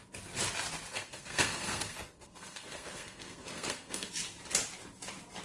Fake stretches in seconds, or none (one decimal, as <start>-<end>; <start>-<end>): 0.9-4.1

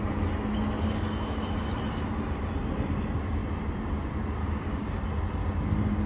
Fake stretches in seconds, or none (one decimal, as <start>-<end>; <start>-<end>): 4.4-4.9